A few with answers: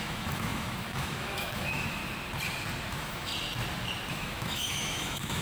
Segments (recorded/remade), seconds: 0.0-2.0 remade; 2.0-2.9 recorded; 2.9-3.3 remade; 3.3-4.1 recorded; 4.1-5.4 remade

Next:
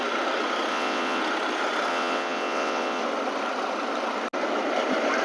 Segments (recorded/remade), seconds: 0.0-0.7 recorded; 0.7-1.2 remade; 1.2-1.9 recorded; 1.9-3.0 remade; 3.0-5.2 recorded

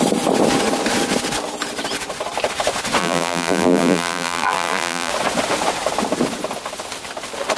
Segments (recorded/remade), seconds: 0.0-3.0 recorded; 3.0-5.1 remade; 5.1-7.6 recorded

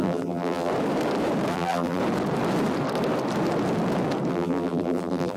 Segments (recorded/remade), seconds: 0.0-0.7 remade; 0.7-1.5 recorded; 1.5-2.0 remade; 2.0-4.3 recorded; 4.3-5.4 remade

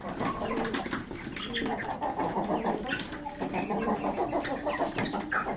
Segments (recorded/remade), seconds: 0.0-1.7 remade; 1.7-2.4 recorded; 2.4-5.6 remade

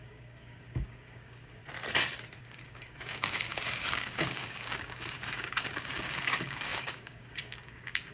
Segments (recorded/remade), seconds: 0.0-1.6 remade; 1.6-2.4 recorded; 2.4-8.1 remade

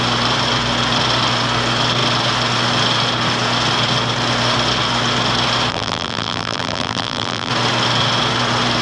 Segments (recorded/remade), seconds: 0.0-5.7 recorded; 5.7-7.5 remade; 7.5-8.8 recorded